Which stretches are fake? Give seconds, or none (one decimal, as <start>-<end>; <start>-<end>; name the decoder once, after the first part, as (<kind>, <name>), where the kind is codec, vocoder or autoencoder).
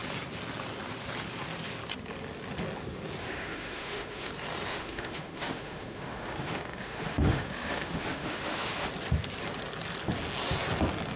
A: 3.2-4.3 (autoencoder, DAC-VAE); 4.7-8.7